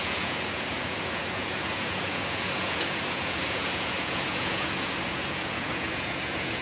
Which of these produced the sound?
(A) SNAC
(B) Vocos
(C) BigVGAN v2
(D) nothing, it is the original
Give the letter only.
B